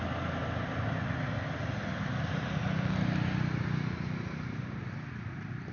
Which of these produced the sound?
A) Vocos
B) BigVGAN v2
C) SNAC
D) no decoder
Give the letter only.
D